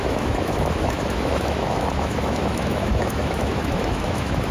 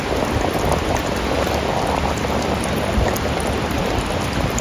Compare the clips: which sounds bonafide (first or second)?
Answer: second